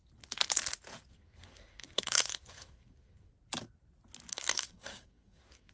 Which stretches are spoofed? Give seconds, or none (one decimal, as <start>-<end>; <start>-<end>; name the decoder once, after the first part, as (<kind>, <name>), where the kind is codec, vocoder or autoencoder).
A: 1.1-3.3 (codec, SNAC); 4.3-5.7